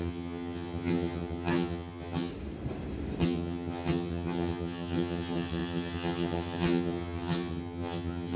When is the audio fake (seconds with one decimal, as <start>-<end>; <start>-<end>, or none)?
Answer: 0.0-2.3; 3.2-8.4